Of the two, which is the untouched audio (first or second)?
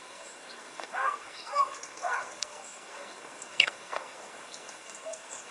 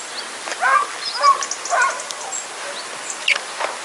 second